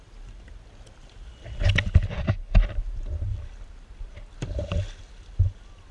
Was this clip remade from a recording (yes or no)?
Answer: no